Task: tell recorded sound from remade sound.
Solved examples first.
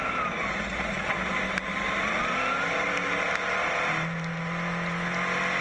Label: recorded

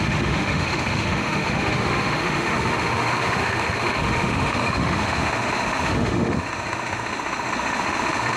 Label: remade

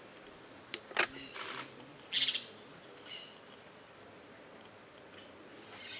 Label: recorded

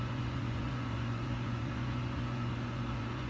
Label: remade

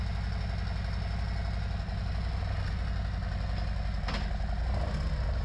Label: recorded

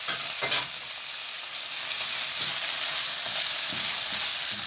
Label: recorded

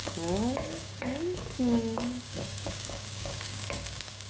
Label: remade